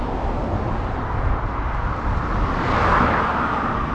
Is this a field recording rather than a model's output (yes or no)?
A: yes